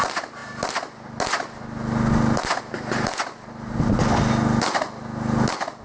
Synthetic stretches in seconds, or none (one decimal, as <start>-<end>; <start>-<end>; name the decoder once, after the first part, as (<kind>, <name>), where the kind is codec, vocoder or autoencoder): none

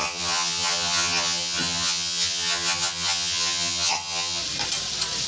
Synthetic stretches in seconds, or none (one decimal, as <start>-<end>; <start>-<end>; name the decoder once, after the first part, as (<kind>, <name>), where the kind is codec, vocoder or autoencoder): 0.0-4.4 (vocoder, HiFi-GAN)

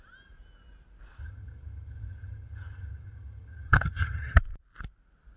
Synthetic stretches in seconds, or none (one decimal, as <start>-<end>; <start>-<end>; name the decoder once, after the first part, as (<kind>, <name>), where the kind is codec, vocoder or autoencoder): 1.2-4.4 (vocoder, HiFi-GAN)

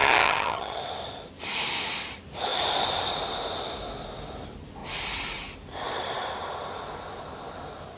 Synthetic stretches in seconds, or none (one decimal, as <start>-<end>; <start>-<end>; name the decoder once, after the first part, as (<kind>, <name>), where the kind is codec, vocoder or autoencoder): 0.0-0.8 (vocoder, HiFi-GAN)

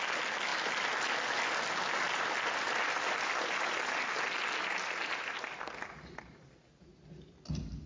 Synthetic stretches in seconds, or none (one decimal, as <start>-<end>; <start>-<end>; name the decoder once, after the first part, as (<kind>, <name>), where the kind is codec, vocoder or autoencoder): none